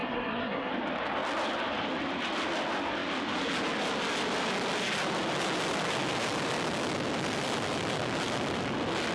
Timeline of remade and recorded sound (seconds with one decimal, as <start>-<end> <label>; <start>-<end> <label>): 0.0-0.7 remade; 0.7-9.1 recorded